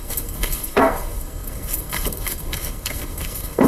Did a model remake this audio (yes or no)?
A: yes